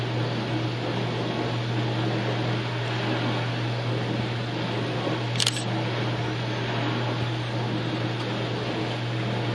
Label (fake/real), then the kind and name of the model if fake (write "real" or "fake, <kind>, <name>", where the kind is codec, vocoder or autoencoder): real